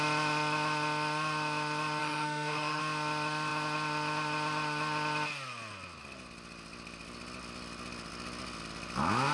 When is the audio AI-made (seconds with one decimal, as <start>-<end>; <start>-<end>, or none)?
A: 2.0-2.8